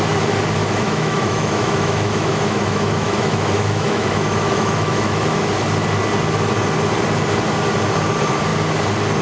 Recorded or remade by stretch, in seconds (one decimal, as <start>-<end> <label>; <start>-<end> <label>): 0.0-0.6 recorded; 0.6-5.5 remade; 5.5-9.2 recorded